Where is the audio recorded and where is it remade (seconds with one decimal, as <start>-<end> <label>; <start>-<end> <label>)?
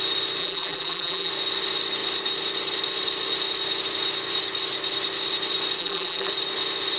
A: 0.0-0.4 recorded; 0.4-1.3 remade; 1.3-5.8 recorded; 5.8-6.3 remade; 6.3-7.0 recorded